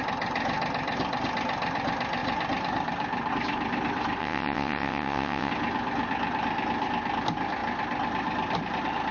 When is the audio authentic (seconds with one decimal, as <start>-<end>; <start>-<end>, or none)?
0.0-4.2; 5.5-9.1